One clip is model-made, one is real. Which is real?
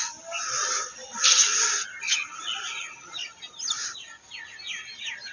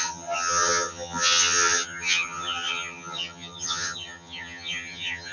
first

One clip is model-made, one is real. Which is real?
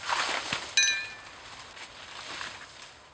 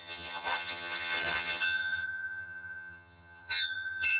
first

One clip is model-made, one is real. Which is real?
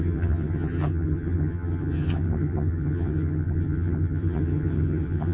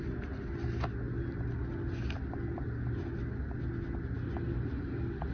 second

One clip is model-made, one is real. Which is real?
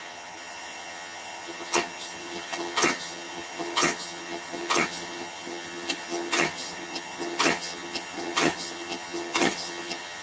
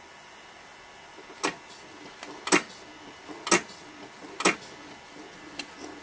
second